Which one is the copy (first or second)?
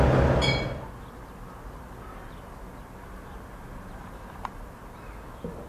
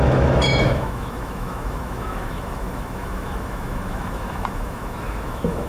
second